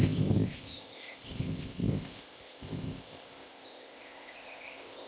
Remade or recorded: remade